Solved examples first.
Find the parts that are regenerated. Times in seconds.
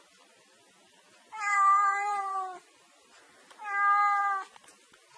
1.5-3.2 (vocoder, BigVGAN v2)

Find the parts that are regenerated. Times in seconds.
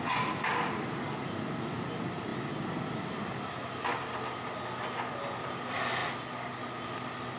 none